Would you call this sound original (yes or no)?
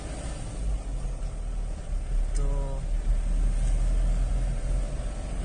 yes